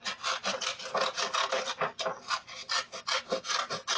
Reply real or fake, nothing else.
real